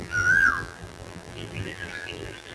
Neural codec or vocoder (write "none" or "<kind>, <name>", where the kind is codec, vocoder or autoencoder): vocoder, BigVGAN v2